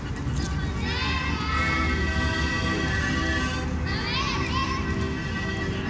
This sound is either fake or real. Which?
real